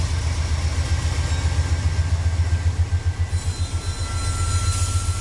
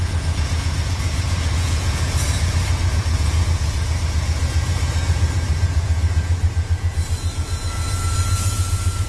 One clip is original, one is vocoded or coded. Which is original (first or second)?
first